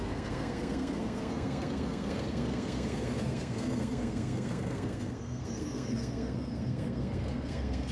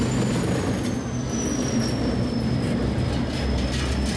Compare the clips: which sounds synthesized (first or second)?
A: first